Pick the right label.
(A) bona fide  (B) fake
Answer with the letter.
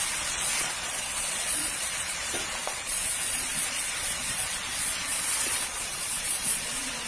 B